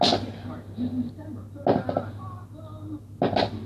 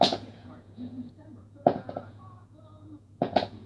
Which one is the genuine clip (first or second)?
first